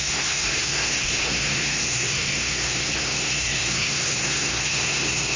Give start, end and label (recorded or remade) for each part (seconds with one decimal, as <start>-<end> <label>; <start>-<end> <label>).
0.0-5.4 remade

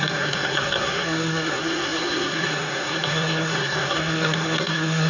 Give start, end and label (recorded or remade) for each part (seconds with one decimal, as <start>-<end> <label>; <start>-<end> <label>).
0.0-5.1 remade

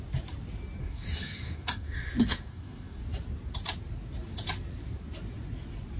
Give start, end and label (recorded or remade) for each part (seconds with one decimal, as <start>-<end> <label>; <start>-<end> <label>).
0.0-0.8 recorded; 0.8-3.0 remade; 3.0-6.0 recorded

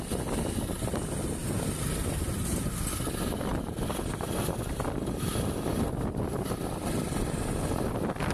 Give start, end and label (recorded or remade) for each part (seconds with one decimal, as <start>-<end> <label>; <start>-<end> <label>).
0.0-8.3 recorded

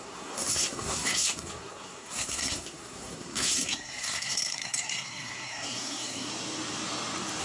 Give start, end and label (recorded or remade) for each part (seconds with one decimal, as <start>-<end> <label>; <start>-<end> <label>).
0.0-6.3 remade; 6.3-7.4 recorded

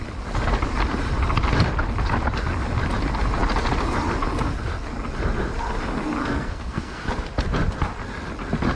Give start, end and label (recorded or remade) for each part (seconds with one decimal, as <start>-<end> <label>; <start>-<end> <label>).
0.0-6.2 recorded; 6.2-7.1 remade; 7.1-8.8 recorded

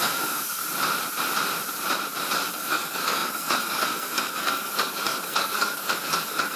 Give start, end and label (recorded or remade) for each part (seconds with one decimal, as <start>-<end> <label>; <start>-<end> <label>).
0.0-0.6 remade; 0.6-2.5 recorded; 2.5-6.6 remade